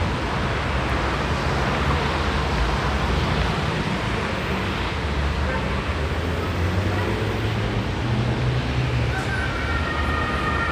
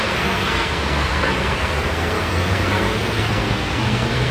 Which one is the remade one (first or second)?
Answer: second